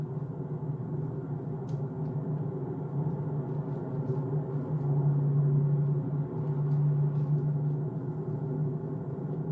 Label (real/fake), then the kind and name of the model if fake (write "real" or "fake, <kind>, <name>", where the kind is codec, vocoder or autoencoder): real